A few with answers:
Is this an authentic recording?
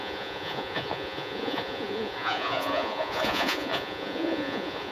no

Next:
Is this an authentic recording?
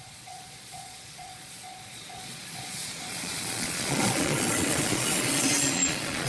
no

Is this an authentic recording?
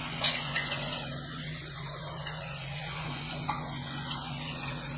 no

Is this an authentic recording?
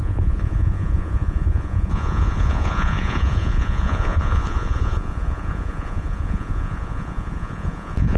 no